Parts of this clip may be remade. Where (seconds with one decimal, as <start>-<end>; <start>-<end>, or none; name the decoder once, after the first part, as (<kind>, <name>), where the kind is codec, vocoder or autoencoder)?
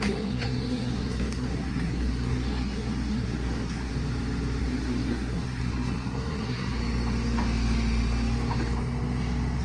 0.0-3.9 (codec, SNAC); 4.6-6.8